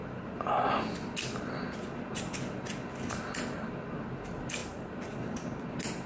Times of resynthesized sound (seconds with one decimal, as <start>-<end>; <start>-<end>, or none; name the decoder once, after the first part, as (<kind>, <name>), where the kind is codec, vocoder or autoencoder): none